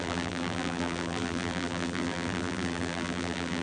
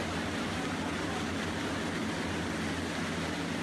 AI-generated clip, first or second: first